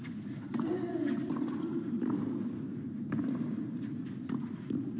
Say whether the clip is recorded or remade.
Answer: recorded